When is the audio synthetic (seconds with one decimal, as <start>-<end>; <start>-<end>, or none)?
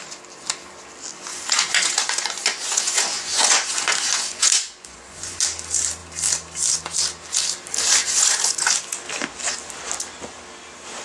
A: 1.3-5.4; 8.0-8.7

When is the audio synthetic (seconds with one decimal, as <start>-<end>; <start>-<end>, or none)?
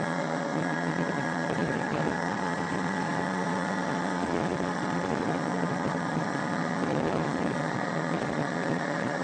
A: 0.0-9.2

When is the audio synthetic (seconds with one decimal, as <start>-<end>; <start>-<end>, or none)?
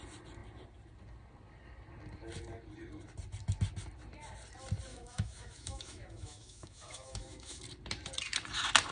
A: 4.9-7.6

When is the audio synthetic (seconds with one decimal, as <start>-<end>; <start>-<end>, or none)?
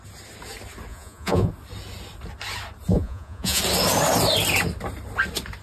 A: 0.9-1.5; 2.9-3.6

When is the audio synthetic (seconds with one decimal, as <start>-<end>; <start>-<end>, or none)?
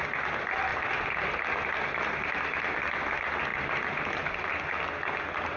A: none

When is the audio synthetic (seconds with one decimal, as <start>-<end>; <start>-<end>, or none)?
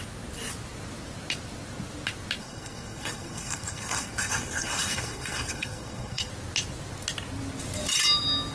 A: 2.4-6.3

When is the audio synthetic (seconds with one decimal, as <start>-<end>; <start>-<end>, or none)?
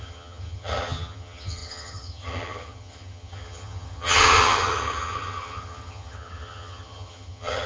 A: 0.0-7.7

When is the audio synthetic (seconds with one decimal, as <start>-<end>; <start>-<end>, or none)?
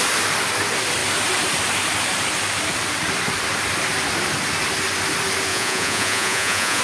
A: 5.5-6.8